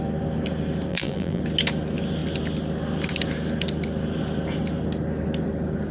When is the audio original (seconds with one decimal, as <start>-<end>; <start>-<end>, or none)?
0.0-0.9; 1.4-5.9